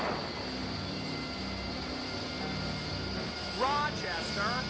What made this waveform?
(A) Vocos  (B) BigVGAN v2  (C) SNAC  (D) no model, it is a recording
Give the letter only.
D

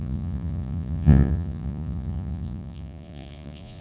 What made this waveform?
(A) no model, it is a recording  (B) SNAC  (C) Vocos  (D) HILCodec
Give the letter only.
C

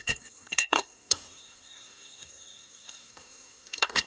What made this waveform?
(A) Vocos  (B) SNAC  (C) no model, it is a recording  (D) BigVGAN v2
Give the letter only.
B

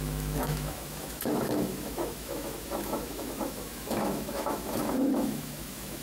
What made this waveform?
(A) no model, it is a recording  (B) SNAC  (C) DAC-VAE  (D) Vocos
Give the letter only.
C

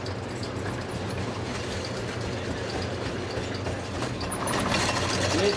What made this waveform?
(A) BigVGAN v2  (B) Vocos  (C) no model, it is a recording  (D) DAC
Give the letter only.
C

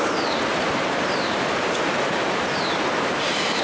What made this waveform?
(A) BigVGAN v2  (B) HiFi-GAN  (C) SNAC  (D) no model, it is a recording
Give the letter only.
A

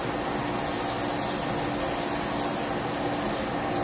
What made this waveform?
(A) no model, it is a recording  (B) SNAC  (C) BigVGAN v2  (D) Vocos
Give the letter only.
A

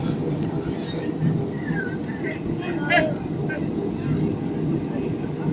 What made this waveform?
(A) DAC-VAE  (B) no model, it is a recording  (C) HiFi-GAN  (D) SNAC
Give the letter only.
B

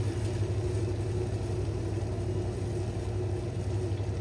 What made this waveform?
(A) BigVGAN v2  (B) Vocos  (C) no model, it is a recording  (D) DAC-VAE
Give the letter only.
C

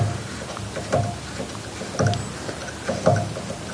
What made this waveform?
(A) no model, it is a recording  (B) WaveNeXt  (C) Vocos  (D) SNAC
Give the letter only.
A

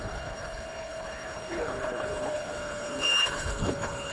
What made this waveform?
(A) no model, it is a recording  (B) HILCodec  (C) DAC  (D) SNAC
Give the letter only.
B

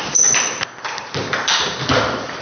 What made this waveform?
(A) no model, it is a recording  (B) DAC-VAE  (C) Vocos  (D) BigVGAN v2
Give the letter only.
A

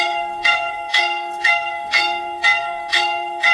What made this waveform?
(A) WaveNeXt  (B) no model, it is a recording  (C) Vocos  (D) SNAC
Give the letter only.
D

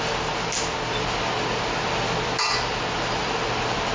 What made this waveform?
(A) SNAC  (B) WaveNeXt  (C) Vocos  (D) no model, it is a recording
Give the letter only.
D